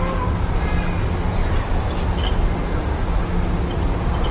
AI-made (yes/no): no